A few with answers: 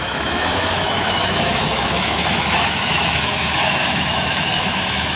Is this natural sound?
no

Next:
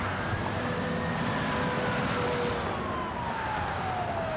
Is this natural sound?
yes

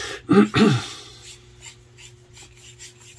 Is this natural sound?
yes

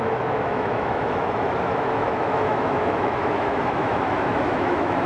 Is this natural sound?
no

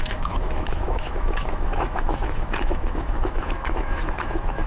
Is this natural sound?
no